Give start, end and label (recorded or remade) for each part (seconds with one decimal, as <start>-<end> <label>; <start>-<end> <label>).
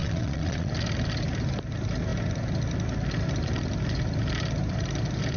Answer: 0.0-0.7 remade; 0.7-5.4 recorded